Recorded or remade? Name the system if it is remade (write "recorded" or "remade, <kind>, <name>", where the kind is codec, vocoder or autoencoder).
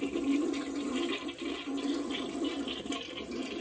recorded